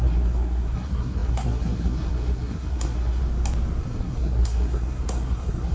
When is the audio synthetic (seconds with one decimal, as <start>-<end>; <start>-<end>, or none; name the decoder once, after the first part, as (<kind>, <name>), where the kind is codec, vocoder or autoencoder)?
0.0-3.2 (codec, SNAC); 3.8-5.7